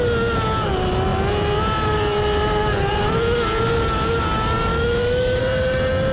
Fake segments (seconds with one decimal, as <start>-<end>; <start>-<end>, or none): 4.7-5.4